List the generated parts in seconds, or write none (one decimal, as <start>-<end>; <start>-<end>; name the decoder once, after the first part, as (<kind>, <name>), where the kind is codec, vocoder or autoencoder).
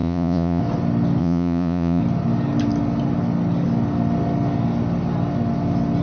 0.0-0.6 (vocoder, Vocos); 1.2-2.0